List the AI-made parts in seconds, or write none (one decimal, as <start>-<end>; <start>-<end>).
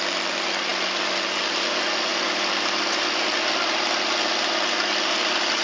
none